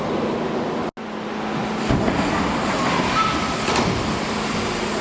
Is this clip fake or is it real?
real